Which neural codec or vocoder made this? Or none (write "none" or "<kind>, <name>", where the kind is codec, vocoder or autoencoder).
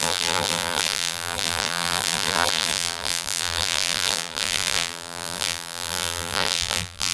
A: vocoder, BigVGAN v2